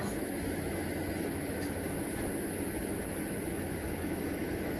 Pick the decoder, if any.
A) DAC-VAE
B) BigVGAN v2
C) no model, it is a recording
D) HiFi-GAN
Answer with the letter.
A